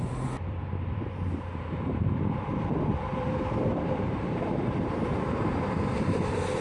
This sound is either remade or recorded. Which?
remade